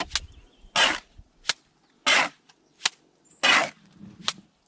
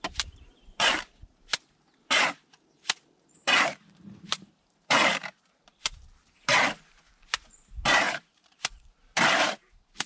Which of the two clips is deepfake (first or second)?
second